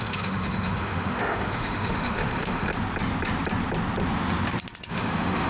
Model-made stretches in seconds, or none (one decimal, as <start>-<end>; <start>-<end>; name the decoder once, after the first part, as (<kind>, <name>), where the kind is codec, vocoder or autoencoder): 0.0-2.7 (autoencoder, DAC-VAE); 4.9-5.5

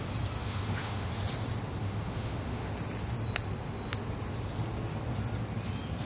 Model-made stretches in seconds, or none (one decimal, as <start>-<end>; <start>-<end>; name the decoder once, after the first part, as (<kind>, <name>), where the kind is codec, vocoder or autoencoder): 0.4-1.1 (autoencoder, DAC-VAE); 1.8-2.7

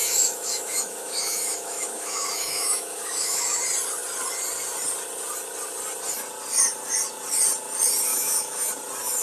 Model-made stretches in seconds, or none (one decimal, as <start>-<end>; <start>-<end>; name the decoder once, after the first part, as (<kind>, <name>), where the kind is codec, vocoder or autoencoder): 0.0-3.6 (autoencoder, DAC-VAE); 8.1-8.7

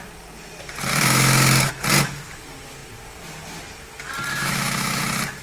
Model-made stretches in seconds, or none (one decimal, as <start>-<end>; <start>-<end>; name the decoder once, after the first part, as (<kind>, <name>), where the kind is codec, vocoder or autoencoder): 0.9-1.7 (autoencoder, DAC-VAE); 4.3-5.0

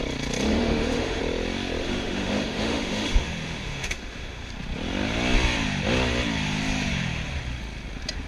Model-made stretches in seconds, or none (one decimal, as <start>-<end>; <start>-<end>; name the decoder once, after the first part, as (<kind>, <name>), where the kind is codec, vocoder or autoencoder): 0.5-1.2 (autoencoder, DAC-VAE); 1.8-4.5